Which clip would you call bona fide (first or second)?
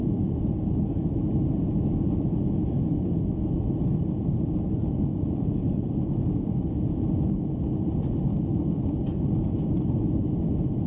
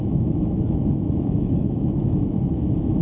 first